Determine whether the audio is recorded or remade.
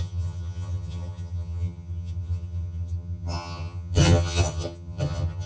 remade